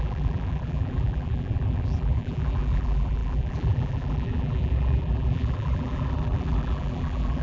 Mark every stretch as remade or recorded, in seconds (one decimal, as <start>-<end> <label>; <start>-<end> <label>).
0.0-7.4 remade